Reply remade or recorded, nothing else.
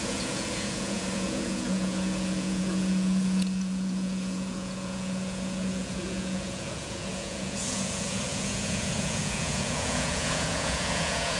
remade